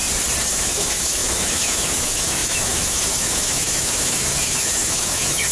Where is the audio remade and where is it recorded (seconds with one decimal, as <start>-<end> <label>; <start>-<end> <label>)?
0.0-0.5 recorded; 0.5-5.5 remade